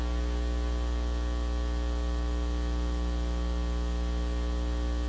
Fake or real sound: real